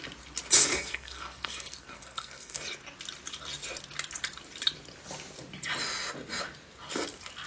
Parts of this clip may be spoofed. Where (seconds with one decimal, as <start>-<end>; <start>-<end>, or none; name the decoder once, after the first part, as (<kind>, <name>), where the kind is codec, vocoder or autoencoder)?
0.6-2.6 (codec, SNAC)